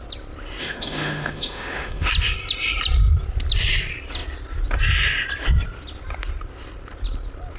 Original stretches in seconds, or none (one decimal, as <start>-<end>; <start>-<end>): 0.0-0.6; 2.1-7.6